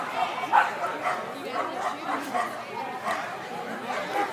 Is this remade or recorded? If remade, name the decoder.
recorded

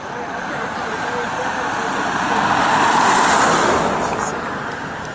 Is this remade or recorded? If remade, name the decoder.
recorded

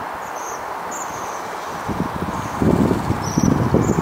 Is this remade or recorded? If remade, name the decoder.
recorded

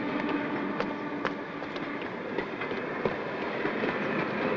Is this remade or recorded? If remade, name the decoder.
recorded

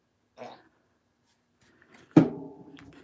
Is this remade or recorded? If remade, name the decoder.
recorded